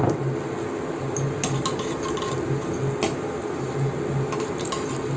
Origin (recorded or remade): recorded